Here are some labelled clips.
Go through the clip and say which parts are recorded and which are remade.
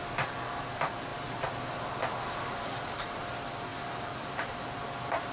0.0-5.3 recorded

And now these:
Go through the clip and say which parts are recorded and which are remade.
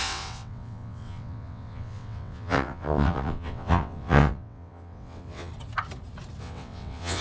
0.0-5.5 remade; 5.5-6.4 recorded; 6.4-7.2 remade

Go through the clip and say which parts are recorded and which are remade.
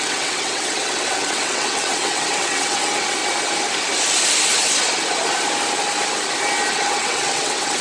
0.0-3.2 remade; 3.2-6.7 recorded; 6.7-7.8 remade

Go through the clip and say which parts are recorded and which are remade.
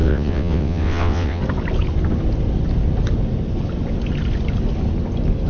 0.0-1.4 remade; 1.4-5.5 recorded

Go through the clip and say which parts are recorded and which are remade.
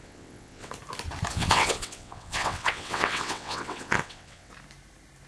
0.0-0.7 remade; 0.7-1.3 recorded; 1.3-4.5 remade; 4.5-5.3 recorded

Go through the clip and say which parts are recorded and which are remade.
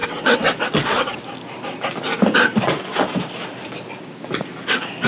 0.0-1.2 remade; 1.2-5.1 recorded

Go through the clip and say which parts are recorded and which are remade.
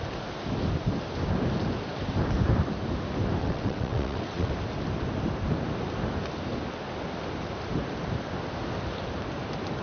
0.0-3.4 recorded; 3.4-4.5 remade; 4.5-9.8 recorded